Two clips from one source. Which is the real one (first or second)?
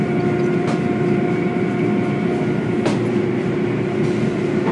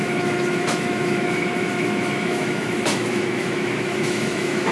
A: first